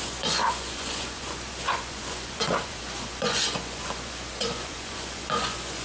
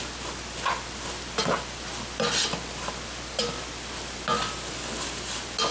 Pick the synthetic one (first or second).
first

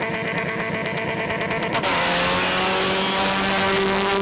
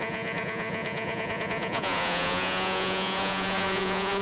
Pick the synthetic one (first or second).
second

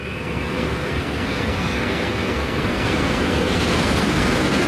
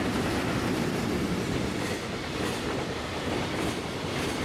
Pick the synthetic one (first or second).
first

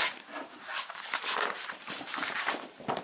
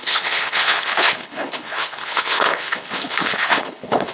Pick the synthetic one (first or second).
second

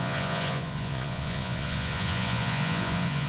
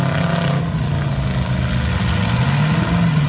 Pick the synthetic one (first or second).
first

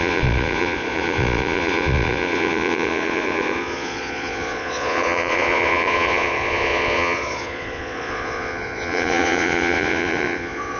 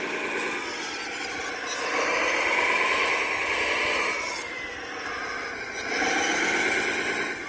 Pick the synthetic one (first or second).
first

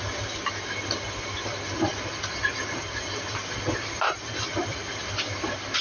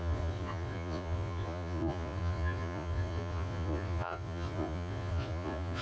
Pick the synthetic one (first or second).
second